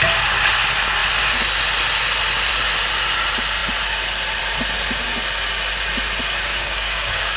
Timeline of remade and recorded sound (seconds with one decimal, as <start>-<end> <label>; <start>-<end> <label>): 0.0-6.5 recorded; 6.5-7.4 remade